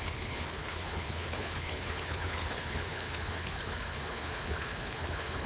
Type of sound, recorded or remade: remade